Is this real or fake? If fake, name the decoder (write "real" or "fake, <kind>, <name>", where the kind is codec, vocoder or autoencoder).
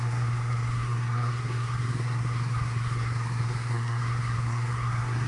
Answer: fake, codec, SNAC